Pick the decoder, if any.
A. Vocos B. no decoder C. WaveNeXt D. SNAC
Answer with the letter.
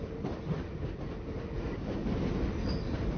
B